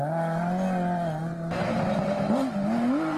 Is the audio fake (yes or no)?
no